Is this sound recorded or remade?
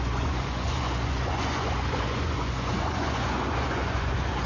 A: remade